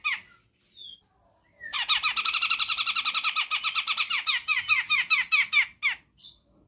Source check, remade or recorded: recorded